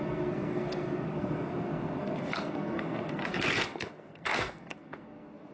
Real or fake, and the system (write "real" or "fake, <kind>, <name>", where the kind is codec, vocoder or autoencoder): fake, codec, SNAC